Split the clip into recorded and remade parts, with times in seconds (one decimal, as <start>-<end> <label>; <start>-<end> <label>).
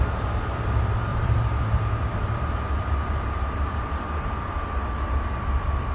0.0-1.1 recorded; 1.1-4.6 remade; 4.6-5.9 recorded